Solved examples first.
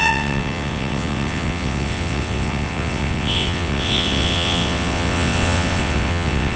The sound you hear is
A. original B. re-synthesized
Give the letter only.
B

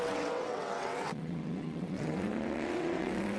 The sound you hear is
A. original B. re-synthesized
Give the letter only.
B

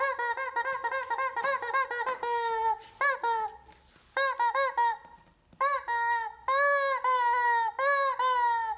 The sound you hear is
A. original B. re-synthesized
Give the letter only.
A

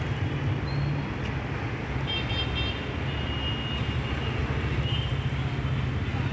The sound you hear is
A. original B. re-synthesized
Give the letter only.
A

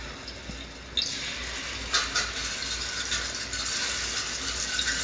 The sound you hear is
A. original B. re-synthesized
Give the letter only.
A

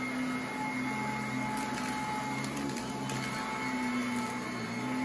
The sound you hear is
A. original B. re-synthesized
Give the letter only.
A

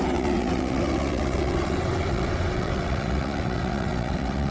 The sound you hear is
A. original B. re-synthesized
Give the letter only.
B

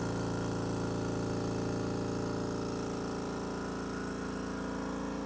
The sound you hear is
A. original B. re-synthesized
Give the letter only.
A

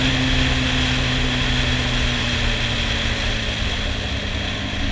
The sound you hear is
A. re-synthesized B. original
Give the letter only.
B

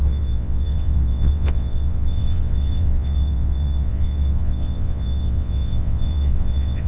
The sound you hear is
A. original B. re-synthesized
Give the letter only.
B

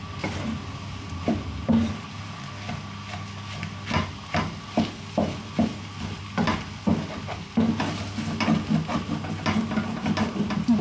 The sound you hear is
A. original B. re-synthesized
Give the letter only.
A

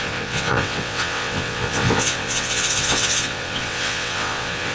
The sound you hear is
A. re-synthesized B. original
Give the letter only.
A